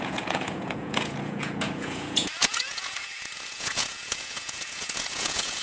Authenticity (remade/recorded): remade